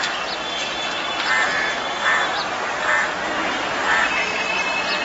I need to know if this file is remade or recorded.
recorded